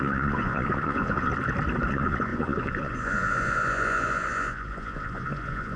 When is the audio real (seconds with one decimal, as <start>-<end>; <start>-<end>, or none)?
1.3-1.9